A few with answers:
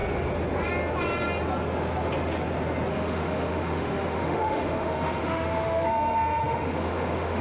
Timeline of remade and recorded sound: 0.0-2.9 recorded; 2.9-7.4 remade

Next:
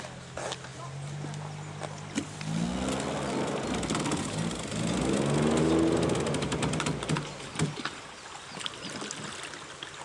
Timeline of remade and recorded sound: 0.0-10.0 recorded

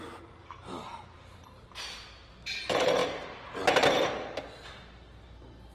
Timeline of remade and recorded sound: 0.0-5.7 recorded

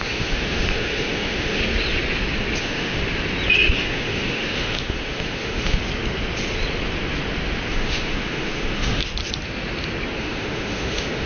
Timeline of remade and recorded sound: 0.0-1.6 remade; 1.6-2.6 recorded; 2.6-3.0 remade; 3.0-3.7 recorded; 3.7-5.8 remade; 5.8-7.7 recorded; 7.7-9.0 remade; 9.0-10.2 recorded; 10.2-11.3 remade

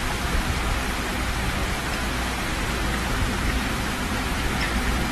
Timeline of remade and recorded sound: 0.0-5.1 recorded

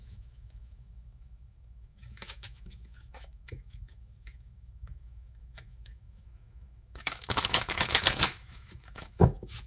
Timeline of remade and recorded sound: 0.0-9.7 remade

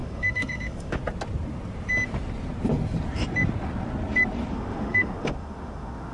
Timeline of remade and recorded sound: 0.0-1.0 remade; 1.0-4.5 recorded; 4.5-6.1 remade